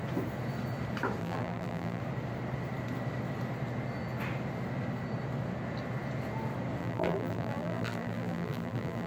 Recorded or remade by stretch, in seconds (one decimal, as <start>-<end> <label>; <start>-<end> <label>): 0.0-1.2 recorded; 1.2-2.0 remade; 2.0-6.8 recorded; 6.8-9.1 remade